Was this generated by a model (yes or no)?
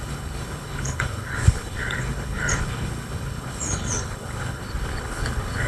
yes